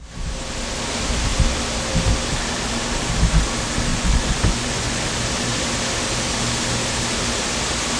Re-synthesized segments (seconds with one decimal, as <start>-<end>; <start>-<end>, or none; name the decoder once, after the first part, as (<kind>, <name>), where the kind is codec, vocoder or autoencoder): 3.9-5.0 (vocoder, Vocos)